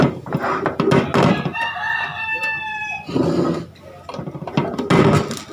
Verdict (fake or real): real